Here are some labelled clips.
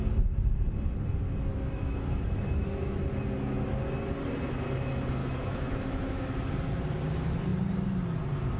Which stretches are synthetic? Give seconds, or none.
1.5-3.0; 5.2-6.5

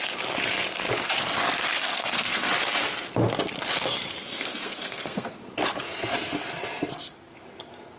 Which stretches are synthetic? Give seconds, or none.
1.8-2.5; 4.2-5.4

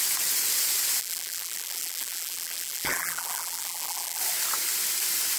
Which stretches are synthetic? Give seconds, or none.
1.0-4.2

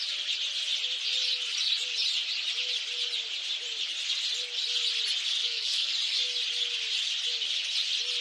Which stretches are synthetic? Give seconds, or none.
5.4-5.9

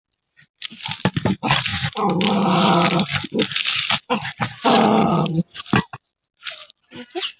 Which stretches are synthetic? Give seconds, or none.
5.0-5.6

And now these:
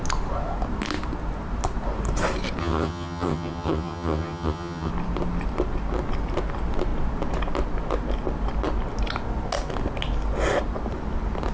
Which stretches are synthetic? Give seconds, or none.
2.6-4.9